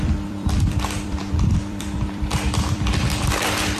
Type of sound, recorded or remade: remade